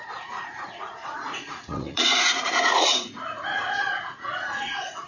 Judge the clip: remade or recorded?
remade